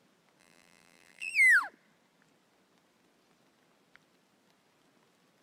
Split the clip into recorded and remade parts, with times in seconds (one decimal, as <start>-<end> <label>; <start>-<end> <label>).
0.0-0.4 recorded; 0.4-1.3 remade; 1.3-5.4 recorded